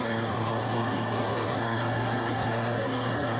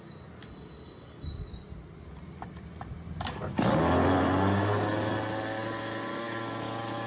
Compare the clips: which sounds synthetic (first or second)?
first